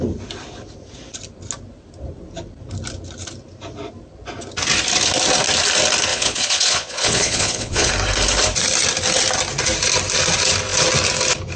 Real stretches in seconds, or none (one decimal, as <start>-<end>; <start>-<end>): 0.0-6.1; 7.9-11.6

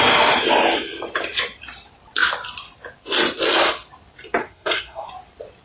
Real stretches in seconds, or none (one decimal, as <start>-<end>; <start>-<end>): 0.0-4.4; 5.1-5.6

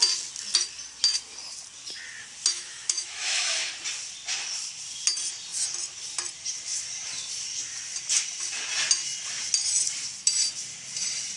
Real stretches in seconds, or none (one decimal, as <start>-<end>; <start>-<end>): 0.0-2.5; 3.7-11.4

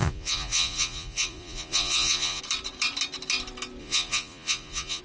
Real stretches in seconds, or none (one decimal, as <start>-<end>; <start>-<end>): 2.4-3.8

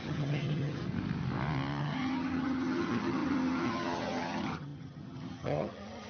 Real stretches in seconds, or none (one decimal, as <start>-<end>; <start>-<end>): 0.8-1.8